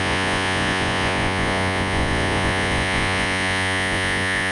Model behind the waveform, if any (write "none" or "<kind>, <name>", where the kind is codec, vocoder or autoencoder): vocoder, Vocos